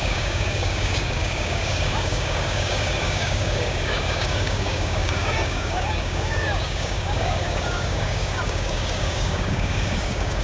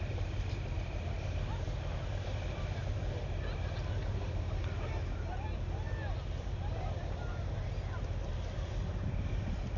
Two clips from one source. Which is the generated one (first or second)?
first